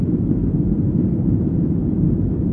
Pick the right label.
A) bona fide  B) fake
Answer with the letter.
A